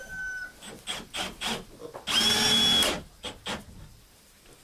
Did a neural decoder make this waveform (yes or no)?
no